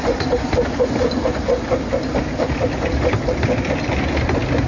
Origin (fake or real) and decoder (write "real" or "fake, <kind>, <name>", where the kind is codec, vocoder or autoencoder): real